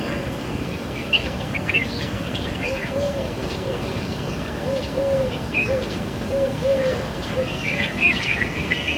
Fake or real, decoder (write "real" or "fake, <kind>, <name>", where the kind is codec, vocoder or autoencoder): fake, codec, SNAC